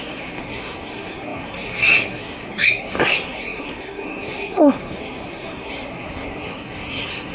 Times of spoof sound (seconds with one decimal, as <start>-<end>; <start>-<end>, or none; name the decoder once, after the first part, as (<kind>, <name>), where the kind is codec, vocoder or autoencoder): 0.0-7.3 (codec, SNAC)